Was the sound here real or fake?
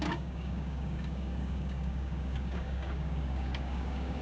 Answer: fake